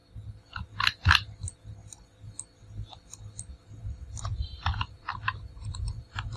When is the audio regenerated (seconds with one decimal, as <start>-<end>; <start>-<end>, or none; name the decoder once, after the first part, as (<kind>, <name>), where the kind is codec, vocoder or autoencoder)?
3.8-6.4 (vocoder, BigVGAN v2)